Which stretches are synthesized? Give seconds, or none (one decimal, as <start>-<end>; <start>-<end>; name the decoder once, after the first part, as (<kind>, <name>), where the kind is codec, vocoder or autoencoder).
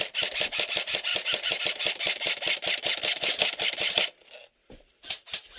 1.1-1.6 (vocoder, BigVGAN v2); 4.6-5.6